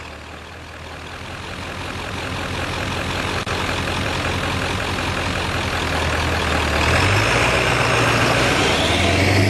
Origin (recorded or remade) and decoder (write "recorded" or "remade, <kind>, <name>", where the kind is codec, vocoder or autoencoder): recorded